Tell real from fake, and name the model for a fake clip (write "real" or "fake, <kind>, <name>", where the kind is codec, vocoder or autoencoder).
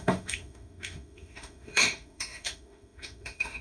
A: fake, autoencoder, DAC-VAE